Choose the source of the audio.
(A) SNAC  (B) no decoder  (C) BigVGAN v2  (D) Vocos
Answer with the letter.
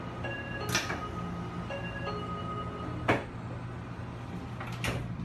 B